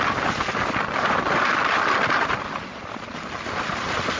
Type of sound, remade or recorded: recorded